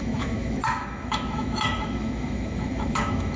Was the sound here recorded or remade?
remade